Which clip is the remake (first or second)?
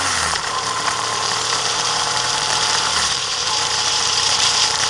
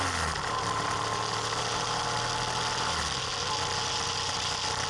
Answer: first